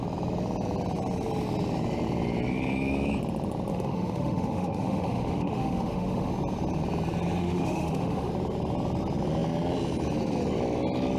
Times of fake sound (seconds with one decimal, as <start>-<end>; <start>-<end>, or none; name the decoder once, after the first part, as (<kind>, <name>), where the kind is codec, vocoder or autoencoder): 3.7-6.3 (autoencoder, DAC-VAE); 7.4-8.3